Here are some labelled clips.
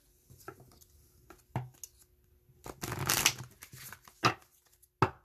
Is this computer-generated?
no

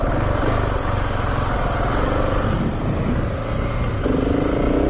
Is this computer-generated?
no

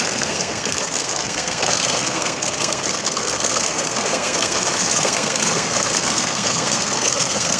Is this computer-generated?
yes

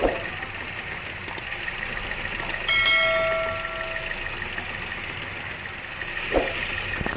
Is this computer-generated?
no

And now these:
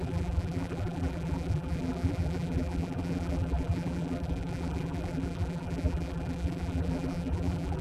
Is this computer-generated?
yes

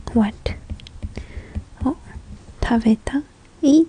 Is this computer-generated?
no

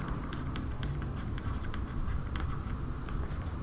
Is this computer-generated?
yes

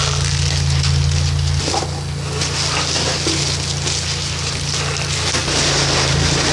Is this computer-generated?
no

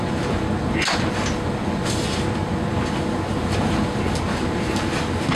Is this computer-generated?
no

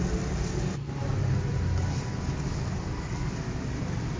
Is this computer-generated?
no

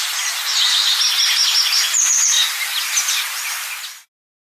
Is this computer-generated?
no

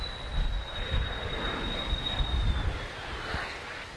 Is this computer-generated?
no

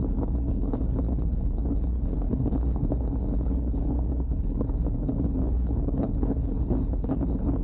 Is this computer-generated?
yes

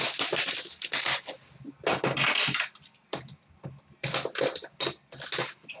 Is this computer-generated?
no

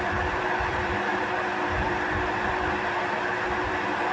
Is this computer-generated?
yes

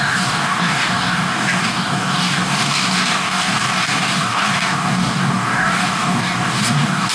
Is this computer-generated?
yes